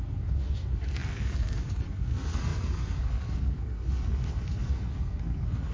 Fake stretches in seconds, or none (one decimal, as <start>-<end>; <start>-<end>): 0.0-5.7